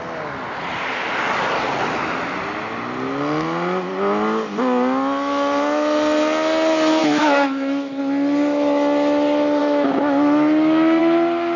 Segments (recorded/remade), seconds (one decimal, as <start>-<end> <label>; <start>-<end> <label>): 0.0-7.0 recorded; 7.0-8.0 remade; 8.0-9.6 recorded; 9.6-11.0 remade; 11.0-11.6 recorded